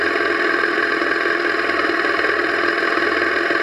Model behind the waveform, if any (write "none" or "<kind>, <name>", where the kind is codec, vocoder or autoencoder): none